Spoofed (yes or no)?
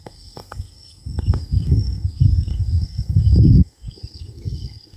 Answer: yes